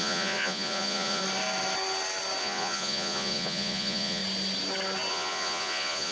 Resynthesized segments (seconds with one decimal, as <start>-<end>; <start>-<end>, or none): 0.0-1.2; 2.4-4.2; 5.1-6.1